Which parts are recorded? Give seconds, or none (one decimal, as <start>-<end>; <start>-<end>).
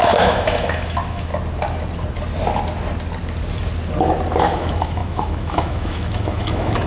1.3-4.4